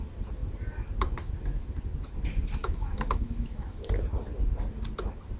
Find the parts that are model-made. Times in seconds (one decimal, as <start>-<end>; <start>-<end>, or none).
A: 2.6-3.8